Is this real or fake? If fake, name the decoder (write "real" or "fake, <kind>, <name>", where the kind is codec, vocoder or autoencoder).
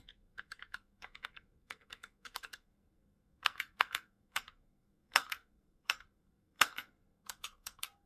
fake, codec, SNAC